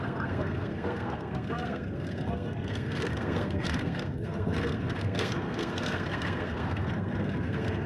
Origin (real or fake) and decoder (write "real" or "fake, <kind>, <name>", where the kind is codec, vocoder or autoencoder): fake, codec, SNAC